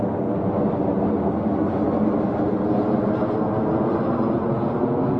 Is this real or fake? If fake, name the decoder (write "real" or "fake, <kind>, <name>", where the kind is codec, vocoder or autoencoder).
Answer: real